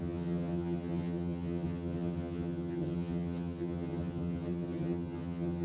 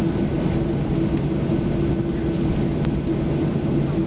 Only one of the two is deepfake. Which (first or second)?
first